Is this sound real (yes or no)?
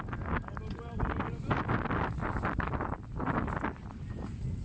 yes